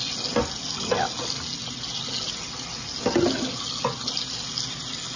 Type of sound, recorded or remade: recorded